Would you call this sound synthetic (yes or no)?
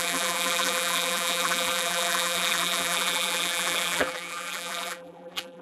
yes